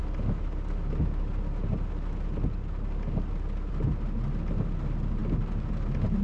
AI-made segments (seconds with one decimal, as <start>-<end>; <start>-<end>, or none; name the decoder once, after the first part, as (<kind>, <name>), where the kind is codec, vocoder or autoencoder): none

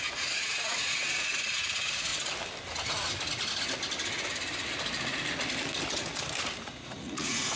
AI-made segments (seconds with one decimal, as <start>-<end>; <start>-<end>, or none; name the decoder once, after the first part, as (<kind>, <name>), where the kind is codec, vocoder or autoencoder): 0.0-2.1 (vocoder, Vocos); 6.6-7.6

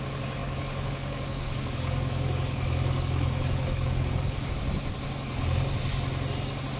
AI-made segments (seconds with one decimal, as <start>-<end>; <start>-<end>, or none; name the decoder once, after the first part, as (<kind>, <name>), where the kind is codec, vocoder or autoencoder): 0.4-4.5 (codec, DAC)

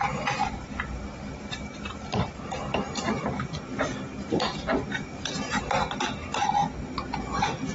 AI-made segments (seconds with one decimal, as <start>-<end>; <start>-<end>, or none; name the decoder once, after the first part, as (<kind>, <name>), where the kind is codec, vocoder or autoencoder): 0.4-1.4 (vocoder, BigVGAN v2); 2.0-5.6

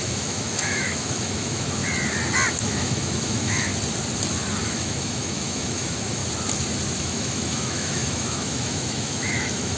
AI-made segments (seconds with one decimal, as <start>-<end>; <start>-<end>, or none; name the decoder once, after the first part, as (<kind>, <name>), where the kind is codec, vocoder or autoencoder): 0.0-1.8 (autoencoder, DAC-VAE); 2.5-3.7; 4.6-6.2; 7.0-9.8

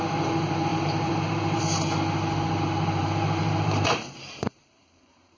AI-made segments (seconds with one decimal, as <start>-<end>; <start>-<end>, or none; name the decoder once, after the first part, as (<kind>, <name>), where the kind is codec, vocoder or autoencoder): 0.7-1.6 (vocoder, BigVGAN v2); 3.0-5.4